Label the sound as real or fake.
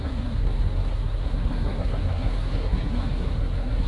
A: fake